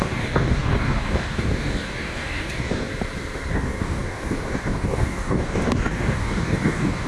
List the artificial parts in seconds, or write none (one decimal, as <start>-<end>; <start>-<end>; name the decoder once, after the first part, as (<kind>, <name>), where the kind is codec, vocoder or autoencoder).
0.0-2.9 (codec, DAC); 3.5-7.1